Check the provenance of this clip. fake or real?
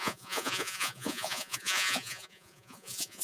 fake